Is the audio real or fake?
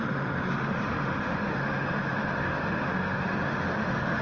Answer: fake